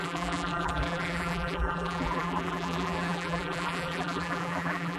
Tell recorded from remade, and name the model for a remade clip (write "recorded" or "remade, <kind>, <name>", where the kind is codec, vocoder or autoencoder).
remade, vocoder, BigVGAN v2